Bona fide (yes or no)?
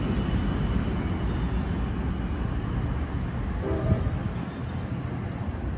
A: yes